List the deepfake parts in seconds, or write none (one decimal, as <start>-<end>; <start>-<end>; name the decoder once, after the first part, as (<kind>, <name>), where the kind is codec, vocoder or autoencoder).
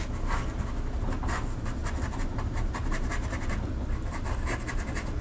none